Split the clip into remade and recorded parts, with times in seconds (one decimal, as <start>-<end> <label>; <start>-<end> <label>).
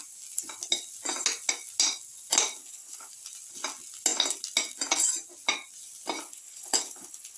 0.0-2.6 recorded; 2.6-3.1 remade; 3.1-6.2 recorded; 6.2-7.4 remade